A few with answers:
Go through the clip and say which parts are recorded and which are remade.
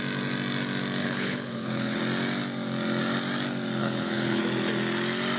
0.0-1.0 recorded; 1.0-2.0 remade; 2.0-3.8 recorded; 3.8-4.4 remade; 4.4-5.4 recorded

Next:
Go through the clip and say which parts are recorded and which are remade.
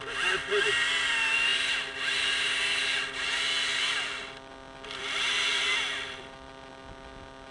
0.0-3.7 recorded; 3.7-4.5 remade; 4.5-5.0 recorded; 5.0-6.7 remade; 6.7-7.5 recorded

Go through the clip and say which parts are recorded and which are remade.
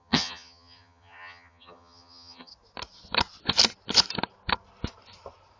0.0-2.5 remade; 2.5-5.6 recorded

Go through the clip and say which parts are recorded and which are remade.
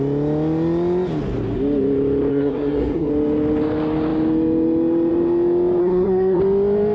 0.0-2.3 recorded; 2.3-3.1 remade; 3.1-5.8 recorded; 5.8-6.4 remade; 6.4-6.9 recorded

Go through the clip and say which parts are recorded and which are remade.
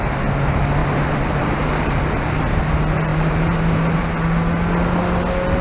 0.0-0.8 recorded; 0.8-2.0 remade; 2.0-3.1 recorded; 3.1-4.0 remade; 4.0-5.6 recorded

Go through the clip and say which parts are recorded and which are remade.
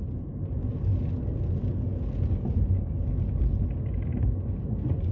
0.0-5.1 recorded